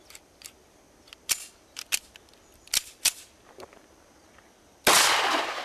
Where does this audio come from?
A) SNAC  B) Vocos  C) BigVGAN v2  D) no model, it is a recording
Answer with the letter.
D